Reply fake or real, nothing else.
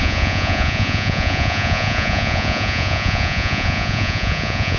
fake